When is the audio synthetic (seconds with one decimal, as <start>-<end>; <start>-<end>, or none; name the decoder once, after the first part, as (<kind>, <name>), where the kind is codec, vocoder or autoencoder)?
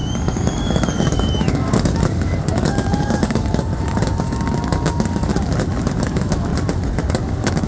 0.0-5.3 (codec, DAC); 6.0-6.5; 7.1-7.7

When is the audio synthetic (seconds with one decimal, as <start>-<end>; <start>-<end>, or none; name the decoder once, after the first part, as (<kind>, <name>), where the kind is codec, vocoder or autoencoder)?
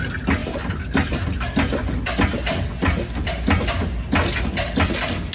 none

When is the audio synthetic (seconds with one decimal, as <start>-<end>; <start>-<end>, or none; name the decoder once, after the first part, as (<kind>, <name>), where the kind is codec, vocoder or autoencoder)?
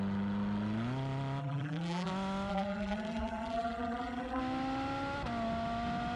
1.4-2.1 (vocoder, BigVGAN v2); 2.5-4.4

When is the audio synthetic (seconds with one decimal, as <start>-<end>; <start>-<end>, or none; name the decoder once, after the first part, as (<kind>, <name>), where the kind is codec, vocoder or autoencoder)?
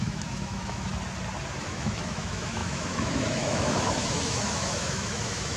0.0-0.9 (autoencoder, DAC-VAE); 1.6-5.6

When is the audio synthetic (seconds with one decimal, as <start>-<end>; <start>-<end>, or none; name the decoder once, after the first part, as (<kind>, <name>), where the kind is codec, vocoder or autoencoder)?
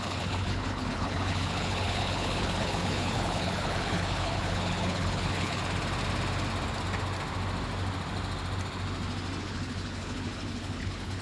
0.0-5.6 (codec, HILCodec); 9.4-11.2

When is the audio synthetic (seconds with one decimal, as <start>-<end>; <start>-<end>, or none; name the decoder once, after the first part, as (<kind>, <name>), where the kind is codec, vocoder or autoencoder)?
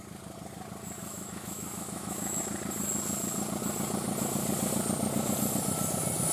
1.0-2.4 (autoencoder, DAC-VAE)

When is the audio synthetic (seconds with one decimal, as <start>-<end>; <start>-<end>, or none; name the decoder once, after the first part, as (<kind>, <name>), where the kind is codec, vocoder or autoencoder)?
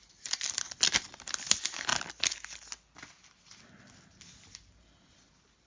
none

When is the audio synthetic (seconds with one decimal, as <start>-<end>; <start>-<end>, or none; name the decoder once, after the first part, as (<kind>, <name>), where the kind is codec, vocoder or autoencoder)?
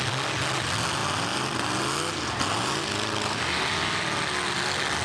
none